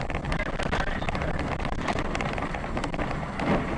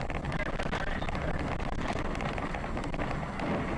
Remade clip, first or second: first